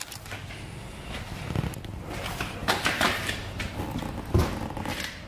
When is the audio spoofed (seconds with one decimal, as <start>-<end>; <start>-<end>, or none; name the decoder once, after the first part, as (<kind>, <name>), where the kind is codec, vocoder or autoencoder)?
2.6-3.6 (vocoder, BigVGAN v2)